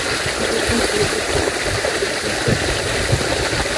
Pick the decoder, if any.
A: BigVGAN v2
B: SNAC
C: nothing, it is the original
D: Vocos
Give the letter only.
C